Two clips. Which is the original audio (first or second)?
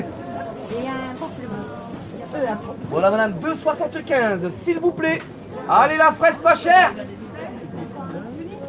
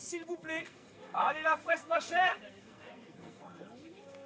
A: first